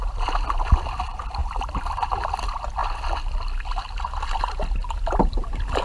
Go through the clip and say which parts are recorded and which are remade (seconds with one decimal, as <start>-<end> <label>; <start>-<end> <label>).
0.0-5.8 recorded